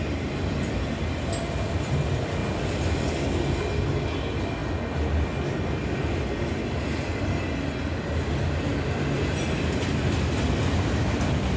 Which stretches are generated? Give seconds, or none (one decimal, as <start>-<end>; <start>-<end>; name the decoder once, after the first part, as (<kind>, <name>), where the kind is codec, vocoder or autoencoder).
2.4-3.1 (vocoder, BigVGAN v2)